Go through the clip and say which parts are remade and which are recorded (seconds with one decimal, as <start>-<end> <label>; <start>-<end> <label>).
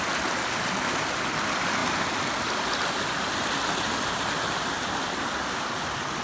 0.0-1.8 recorded; 1.8-5.5 remade; 5.5-6.2 recorded